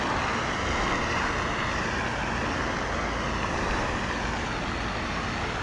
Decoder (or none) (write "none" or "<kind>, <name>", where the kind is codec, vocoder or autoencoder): none